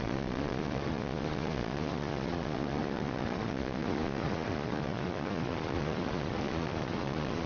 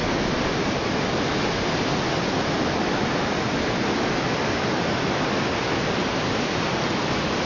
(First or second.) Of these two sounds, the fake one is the first